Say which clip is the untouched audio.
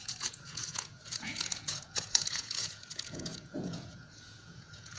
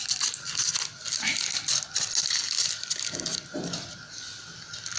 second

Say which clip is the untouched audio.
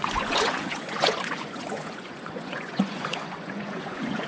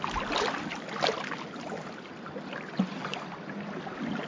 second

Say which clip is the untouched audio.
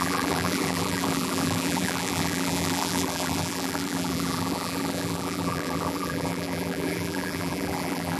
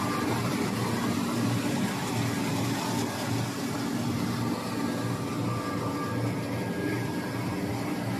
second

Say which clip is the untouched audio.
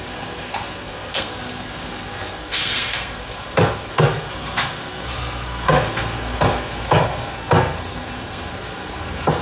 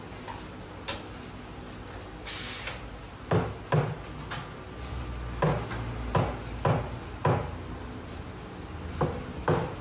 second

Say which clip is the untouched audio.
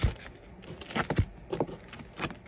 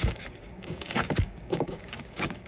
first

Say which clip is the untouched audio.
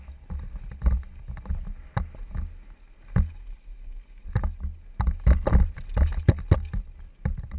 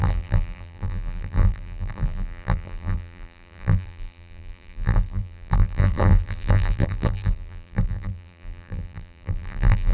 first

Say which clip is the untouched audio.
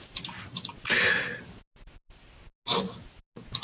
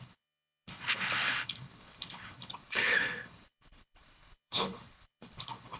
first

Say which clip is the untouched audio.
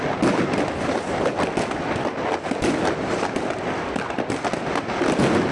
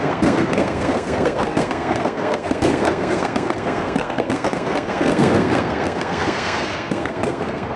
first